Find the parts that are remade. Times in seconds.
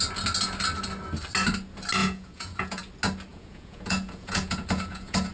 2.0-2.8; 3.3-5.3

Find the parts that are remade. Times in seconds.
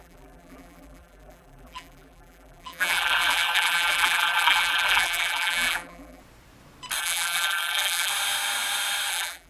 0.0-6.2; 7.0-8.1; 9.1-9.5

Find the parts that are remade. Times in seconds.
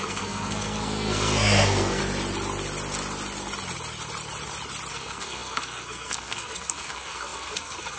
0.0-2.0; 4.9-8.0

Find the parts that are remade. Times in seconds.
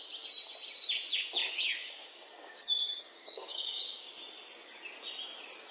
1.4-4.1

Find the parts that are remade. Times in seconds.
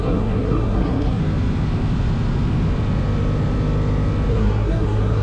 0.0-1.2; 4.3-5.2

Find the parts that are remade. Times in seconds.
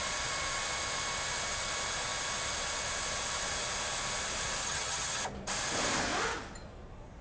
4.6-5.2